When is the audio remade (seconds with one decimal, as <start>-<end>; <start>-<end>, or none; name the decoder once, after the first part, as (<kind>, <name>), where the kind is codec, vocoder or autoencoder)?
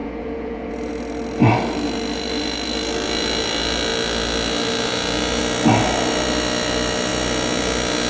0.0-0.7 (vocoder, Vocos)